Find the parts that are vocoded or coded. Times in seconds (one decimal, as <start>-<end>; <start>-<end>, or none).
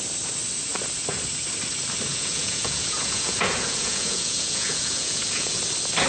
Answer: 2.1-5.6